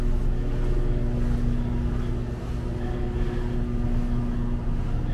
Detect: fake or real real